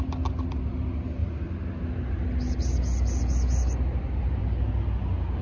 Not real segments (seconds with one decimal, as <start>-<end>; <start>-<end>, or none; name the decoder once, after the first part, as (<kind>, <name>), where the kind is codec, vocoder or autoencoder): none